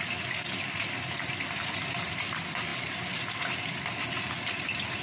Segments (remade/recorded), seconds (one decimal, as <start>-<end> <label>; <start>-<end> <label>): 0.0-5.0 recorded